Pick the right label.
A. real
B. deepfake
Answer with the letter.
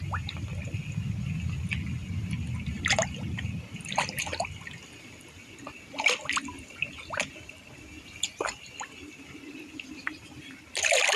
A